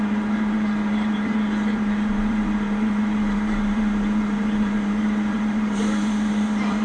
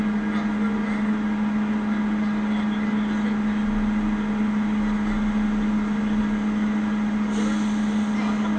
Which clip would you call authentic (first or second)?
second